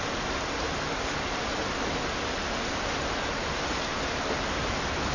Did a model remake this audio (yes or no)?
no